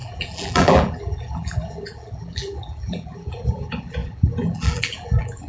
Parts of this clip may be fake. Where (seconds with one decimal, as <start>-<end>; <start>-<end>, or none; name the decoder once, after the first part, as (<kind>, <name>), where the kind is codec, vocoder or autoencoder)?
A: 0.0-5.5 (vocoder, BigVGAN v2)